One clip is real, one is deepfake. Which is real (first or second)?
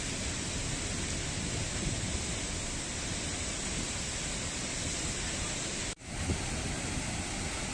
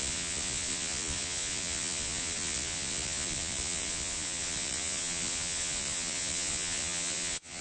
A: first